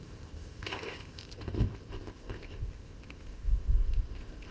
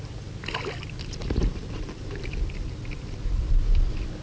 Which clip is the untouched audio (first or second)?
second